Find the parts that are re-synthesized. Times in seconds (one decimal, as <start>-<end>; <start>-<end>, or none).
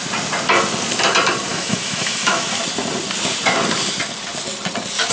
1.5-2.6